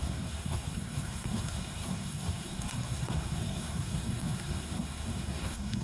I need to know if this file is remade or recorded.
remade